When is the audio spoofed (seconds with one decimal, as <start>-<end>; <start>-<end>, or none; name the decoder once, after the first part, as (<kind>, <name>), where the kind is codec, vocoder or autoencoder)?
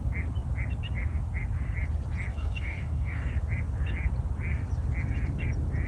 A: 2.3-3.3 (codec, DAC)